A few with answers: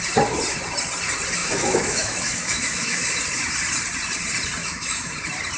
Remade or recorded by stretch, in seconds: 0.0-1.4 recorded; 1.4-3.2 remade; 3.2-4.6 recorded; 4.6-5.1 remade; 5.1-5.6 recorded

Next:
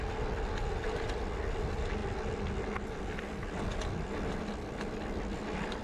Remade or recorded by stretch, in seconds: 0.0-5.8 recorded